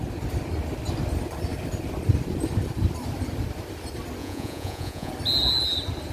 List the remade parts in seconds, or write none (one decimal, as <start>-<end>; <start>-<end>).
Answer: 4.2-5.1